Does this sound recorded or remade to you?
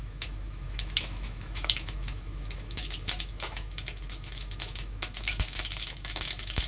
remade